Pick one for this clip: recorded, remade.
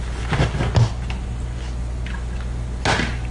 recorded